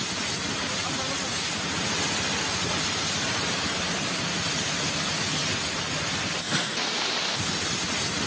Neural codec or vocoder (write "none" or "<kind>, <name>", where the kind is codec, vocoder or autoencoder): vocoder, BigVGAN v2